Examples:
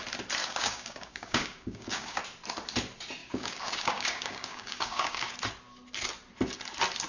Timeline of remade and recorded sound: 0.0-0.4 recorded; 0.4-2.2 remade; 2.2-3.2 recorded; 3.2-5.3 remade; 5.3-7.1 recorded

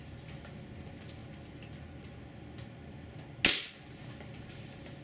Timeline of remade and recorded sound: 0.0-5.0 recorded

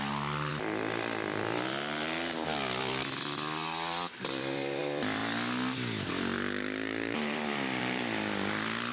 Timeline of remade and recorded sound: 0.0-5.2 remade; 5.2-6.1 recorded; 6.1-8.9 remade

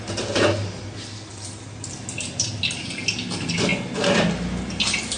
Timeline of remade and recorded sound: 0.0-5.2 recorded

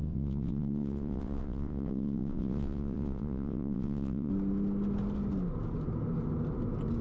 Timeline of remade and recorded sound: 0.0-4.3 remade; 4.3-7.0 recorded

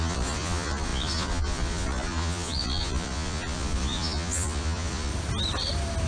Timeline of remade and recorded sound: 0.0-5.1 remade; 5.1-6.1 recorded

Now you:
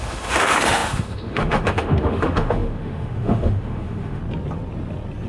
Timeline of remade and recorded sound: 0.0-4.2 remade; 4.2-5.3 recorded

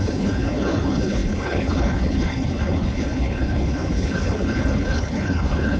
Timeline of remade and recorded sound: 0.0-5.8 remade